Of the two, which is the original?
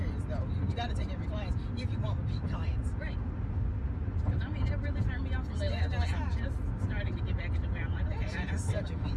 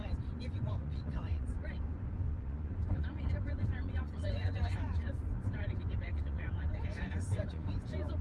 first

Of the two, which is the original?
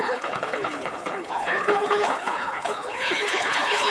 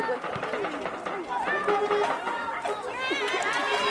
second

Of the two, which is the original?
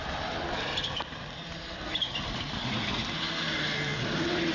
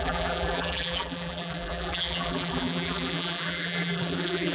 first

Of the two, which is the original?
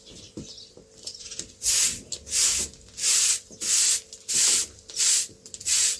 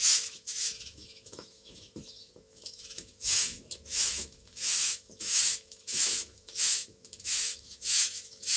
first